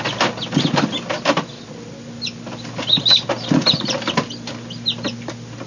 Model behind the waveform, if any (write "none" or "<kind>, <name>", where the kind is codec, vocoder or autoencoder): none